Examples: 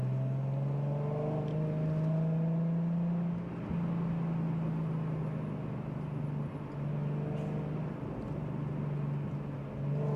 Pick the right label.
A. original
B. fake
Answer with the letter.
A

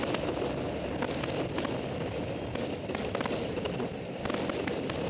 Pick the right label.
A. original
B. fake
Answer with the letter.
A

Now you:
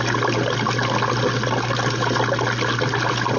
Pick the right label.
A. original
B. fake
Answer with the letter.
A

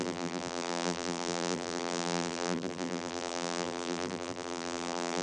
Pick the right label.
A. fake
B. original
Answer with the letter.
A